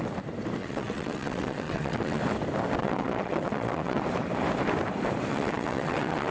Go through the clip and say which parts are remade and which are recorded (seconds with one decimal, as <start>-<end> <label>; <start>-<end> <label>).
0.0-0.6 recorded; 0.6-2.2 remade; 2.2-2.8 recorded; 2.8-4.0 remade; 4.0-5.3 recorded; 5.3-6.3 remade